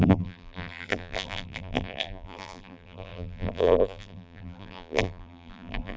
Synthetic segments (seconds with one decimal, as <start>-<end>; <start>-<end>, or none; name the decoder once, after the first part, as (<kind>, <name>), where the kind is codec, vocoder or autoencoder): 0.0-6.0 (vocoder, BigVGAN v2)